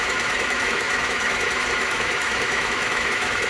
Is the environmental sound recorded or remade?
remade